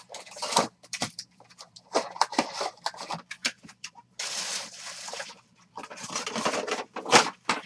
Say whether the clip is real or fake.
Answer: fake